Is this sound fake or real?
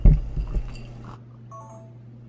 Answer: real